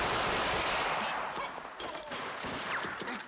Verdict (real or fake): fake